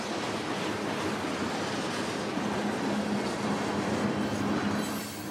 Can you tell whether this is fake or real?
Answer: real